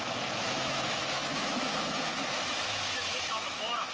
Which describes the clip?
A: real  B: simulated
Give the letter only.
B